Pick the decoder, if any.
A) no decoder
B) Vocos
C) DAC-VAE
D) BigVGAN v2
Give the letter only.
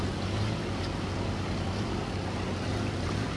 A